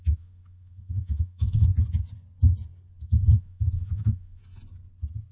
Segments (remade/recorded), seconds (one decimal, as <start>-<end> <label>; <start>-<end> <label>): 0.0-1.7 remade; 1.7-3.0 recorded; 3.0-4.4 remade; 4.4-5.3 recorded